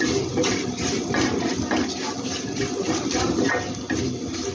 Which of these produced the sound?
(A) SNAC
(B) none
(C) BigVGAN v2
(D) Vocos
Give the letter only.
B